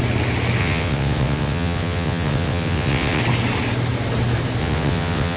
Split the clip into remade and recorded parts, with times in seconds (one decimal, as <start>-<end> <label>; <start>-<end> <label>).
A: 0.0-0.6 recorded; 0.6-3.2 remade; 3.2-4.6 recorded; 4.6-5.4 remade